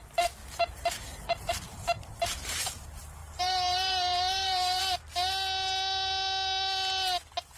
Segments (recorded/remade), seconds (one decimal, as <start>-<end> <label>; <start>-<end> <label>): 0.0-0.4 recorded; 0.4-2.6 remade; 2.6-3.2 recorded; 3.2-4.8 remade; 4.8-7.6 recorded